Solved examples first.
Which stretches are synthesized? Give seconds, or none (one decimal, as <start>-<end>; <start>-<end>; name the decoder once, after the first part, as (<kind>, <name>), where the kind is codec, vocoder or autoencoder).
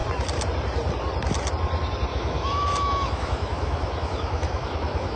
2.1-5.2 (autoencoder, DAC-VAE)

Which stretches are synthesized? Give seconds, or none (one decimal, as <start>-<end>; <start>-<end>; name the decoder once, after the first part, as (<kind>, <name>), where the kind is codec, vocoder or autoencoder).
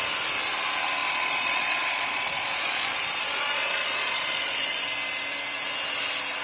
1.0-4.8 (vocoder, Vocos)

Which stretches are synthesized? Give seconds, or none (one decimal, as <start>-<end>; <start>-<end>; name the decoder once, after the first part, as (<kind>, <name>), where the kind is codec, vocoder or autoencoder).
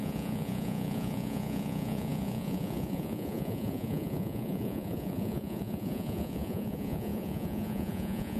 0.0-8.4 (vocoder, Vocos)